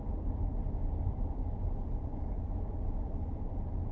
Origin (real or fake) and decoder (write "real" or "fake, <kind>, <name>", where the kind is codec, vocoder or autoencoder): real